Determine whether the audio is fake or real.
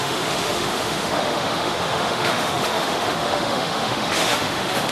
fake